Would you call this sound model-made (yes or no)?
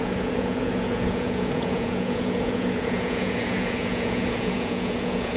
yes